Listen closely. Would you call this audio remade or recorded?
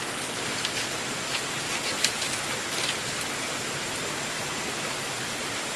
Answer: recorded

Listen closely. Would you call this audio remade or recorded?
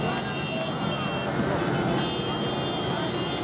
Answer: recorded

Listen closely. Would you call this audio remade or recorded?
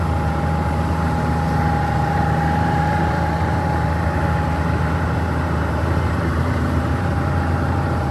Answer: remade